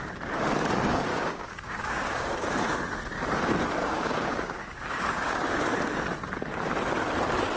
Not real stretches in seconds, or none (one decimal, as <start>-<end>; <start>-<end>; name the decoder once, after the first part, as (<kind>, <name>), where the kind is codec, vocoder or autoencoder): 1.1-2.6 (codec, DAC); 3.8-5.7